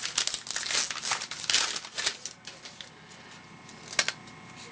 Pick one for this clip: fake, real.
real